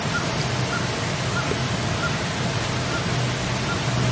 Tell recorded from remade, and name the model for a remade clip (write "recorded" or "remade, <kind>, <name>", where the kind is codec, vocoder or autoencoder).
recorded